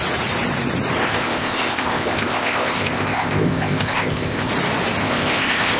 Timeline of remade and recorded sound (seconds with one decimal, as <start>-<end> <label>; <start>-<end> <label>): 0.0-1.0 recorded; 1.0-4.5 remade; 4.5-5.0 recorded; 5.0-5.8 remade